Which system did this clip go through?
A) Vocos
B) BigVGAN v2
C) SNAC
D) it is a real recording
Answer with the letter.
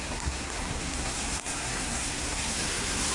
C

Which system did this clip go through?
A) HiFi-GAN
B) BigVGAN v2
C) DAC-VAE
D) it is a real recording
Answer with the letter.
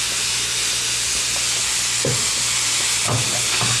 D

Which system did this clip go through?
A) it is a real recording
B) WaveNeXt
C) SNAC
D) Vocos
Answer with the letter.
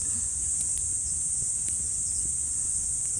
D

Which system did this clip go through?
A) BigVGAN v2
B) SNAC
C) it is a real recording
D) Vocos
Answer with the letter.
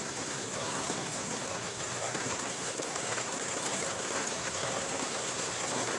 B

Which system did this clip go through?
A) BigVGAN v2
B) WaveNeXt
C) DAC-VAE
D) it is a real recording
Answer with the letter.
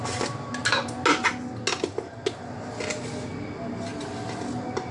D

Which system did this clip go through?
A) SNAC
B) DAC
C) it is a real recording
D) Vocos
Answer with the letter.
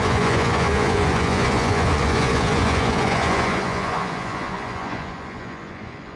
D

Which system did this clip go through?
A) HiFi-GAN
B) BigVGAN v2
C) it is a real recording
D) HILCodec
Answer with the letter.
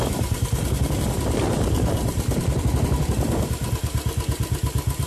B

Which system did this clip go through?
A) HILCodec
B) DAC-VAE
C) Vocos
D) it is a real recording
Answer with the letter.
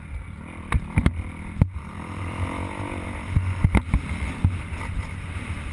D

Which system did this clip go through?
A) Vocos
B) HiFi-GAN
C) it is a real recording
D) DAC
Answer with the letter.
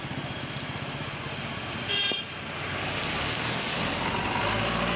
C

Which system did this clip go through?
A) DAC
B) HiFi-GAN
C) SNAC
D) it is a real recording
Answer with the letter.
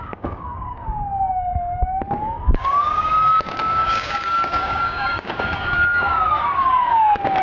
A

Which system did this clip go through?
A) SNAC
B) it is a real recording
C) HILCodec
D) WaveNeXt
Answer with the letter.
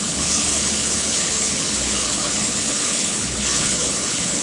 C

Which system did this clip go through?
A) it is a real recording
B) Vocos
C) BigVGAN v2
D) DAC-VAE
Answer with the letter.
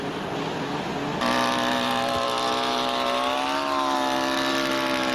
A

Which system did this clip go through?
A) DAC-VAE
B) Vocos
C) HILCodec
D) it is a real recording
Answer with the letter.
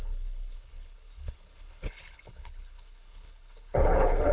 C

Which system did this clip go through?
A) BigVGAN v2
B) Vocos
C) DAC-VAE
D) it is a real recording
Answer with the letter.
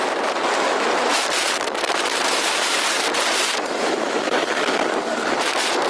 A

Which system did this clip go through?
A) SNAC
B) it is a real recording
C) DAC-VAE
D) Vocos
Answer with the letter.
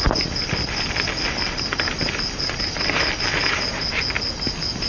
B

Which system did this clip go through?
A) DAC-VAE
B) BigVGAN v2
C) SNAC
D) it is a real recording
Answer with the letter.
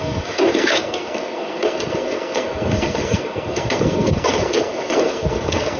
C